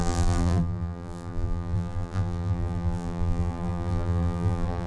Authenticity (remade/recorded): remade